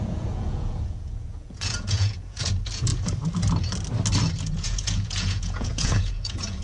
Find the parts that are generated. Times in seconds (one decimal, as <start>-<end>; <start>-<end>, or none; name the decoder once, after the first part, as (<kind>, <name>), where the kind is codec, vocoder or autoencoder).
0.0-2.9 (vocoder, Vocos); 4.4-6.6